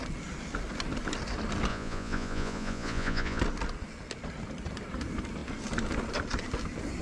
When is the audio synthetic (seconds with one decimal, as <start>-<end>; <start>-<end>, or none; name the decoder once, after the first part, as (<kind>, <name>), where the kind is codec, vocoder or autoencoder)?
1.7-3.4 (vocoder, Vocos)